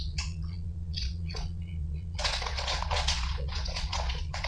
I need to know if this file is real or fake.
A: fake